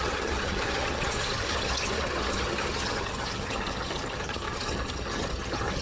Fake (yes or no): yes